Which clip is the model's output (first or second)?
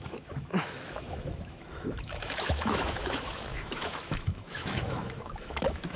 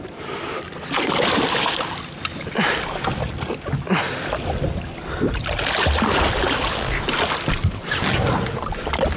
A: first